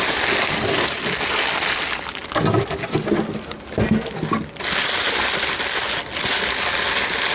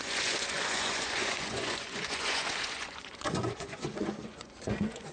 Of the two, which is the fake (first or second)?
second